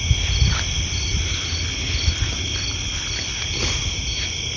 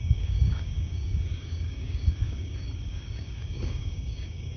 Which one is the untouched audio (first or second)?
first